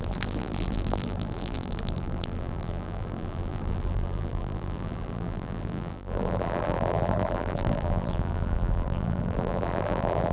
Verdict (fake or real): fake